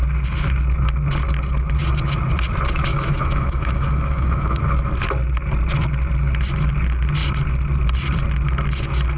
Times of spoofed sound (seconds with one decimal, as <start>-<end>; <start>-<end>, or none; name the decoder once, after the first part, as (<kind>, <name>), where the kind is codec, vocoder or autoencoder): 2.9-4.6 (autoencoder, DAC-VAE)